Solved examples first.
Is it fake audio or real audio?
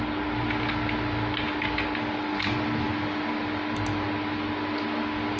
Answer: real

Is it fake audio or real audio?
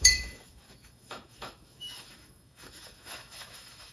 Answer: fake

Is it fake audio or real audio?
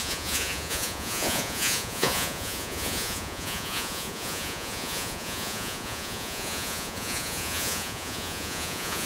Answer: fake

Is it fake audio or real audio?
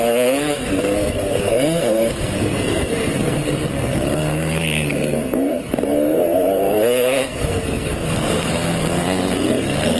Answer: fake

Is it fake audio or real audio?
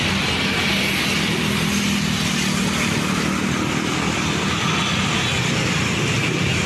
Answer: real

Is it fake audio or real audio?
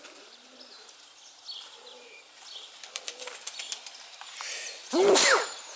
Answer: real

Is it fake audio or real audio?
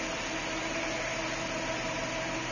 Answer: real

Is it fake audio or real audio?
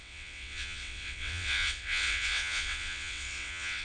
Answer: fake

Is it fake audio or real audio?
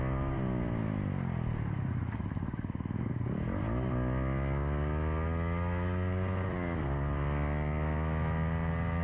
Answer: real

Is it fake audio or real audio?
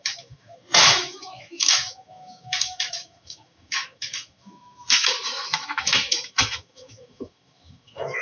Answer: fake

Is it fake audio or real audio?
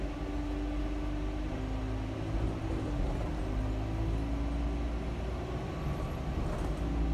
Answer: real